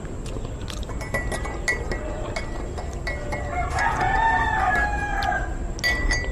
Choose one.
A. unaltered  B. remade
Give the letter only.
A